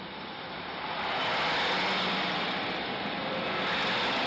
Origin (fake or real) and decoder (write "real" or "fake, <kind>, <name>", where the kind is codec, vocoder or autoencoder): real